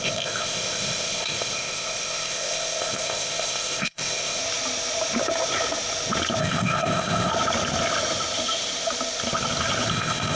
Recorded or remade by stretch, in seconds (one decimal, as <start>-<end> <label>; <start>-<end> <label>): 0.0-4.4 remade; 4.4-6.4 recorded; 6.4-7.3 remade; 7.3-9.9 recorded; 9.9-10.4 remade